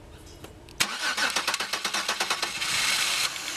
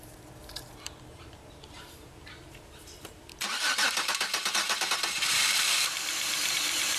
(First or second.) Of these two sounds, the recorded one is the first